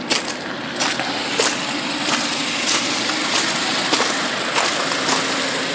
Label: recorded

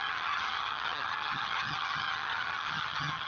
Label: remade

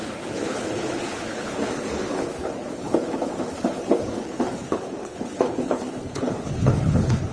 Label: remade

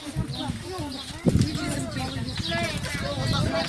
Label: recorded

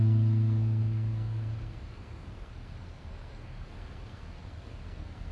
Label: remade